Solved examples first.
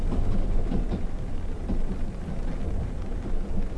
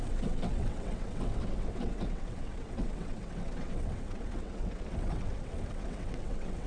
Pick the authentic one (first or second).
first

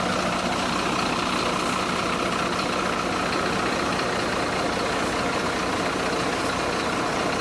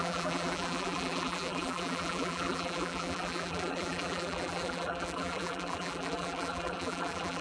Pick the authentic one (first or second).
first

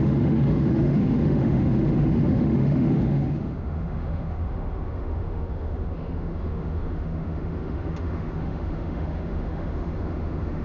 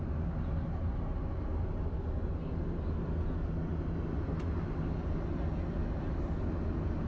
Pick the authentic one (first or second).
second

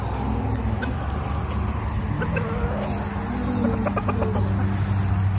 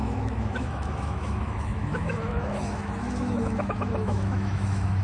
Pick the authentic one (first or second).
first